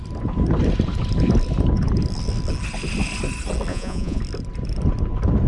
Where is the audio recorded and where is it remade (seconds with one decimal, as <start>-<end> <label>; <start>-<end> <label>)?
0.0-3.7 recorded; 3.7-4.2 remade; 4.2-5.5 recorded